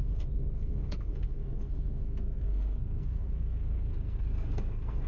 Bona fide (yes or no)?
no